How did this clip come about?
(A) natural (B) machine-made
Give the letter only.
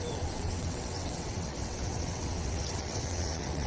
B